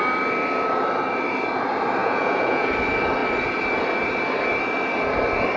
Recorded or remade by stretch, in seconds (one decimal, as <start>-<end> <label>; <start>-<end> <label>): 0.0-2.0 recorded; 2.0-2.7 remade; 2.7-5.6 recorded